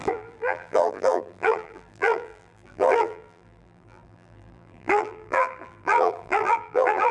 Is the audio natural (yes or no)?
no